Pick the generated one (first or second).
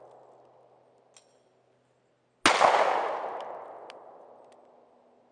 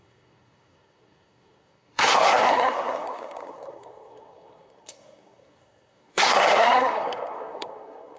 second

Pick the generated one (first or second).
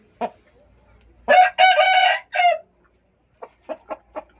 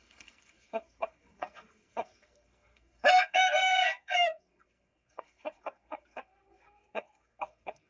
second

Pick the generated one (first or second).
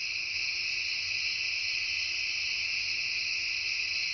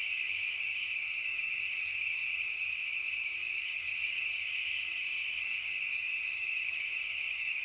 second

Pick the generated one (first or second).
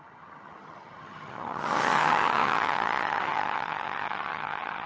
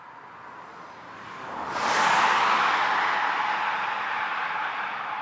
first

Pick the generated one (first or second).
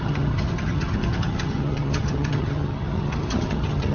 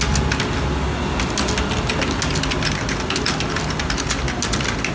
first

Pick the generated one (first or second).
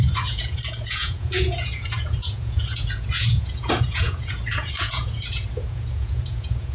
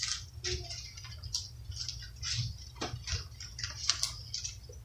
first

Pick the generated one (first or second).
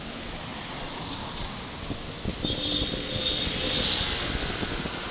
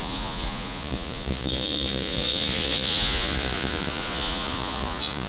second